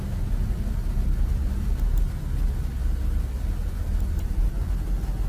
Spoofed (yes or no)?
no